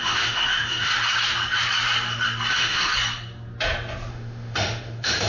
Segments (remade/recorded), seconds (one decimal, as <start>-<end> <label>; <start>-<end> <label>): 0.0-0.9 remade; 0.9-2.5 recorded; 2.5-2.9 remade; 2.9-4.1 recorded; 4.1-5.3 remade